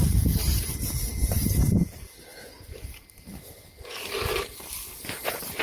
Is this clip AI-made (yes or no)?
no